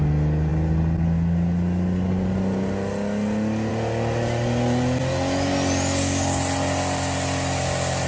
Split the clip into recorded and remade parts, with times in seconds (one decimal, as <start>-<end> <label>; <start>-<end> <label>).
0.0-8.1 recorded